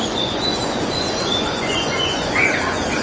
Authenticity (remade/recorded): remade